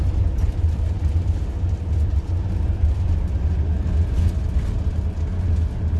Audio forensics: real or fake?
real